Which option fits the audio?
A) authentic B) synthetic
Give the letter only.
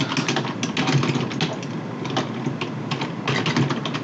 A